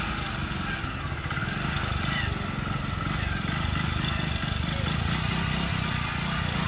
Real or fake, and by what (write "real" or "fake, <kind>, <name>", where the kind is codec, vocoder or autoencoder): real